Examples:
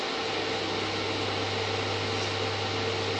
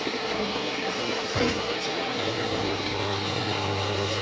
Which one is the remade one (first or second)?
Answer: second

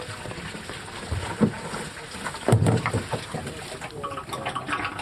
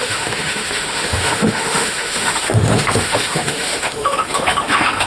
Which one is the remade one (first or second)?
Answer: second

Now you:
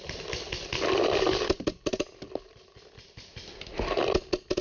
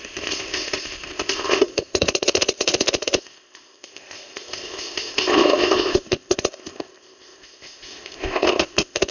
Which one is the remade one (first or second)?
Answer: second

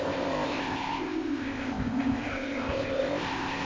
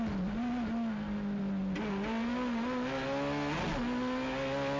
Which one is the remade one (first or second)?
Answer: first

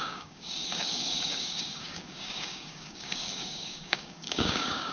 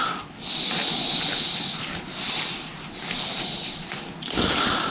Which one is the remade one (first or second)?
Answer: first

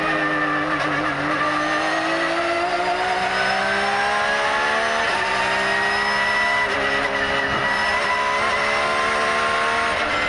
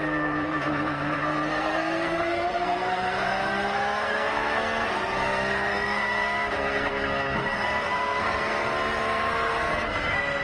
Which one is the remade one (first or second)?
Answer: second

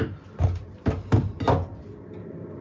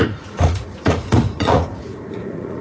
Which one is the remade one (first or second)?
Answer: second